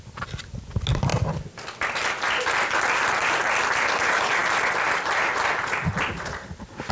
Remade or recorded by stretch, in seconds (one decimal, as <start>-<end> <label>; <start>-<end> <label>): 0.0-6.9 recorded